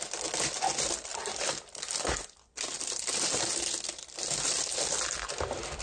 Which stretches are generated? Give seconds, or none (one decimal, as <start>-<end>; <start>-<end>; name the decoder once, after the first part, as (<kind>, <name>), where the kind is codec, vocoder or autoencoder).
none